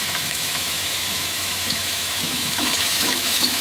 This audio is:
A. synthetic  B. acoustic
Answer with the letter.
A